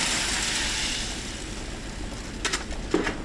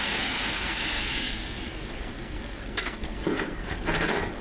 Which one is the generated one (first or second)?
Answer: second